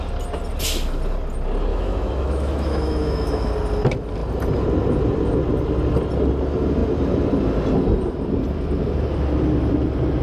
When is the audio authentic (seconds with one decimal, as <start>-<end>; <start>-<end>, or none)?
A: 0.0-1.7; 3.5-10.2